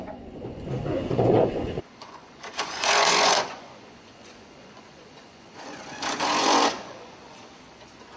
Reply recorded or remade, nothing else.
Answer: remade